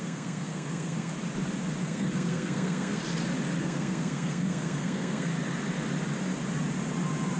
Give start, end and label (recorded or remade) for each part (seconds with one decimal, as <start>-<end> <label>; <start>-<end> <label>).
0.0-1.1 remade; 1.1-1.8 recorded; 1.8-3.0 remade; 3.0-3.6 recorded; 3.6-5.3 remade; 5.3-7.4 recorded